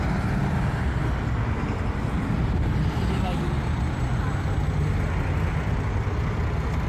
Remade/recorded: recorded